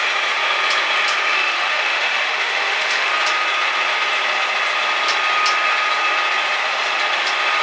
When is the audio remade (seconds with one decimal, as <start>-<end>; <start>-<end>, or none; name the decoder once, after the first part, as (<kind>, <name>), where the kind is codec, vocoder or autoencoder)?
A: 1.3-3.1 (autoencoder, DAC-VAE)